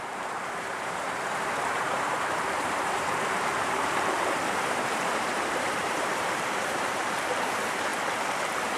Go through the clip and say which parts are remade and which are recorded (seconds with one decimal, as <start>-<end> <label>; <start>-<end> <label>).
0.0-7.9 remade; 7.9-8.8 recorded